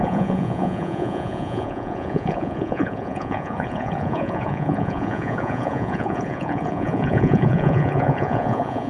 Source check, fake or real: fake